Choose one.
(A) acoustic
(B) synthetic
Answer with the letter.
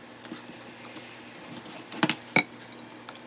A